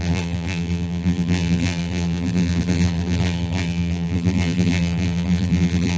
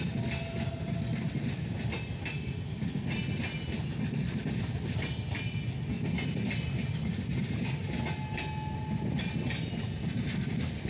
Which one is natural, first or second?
second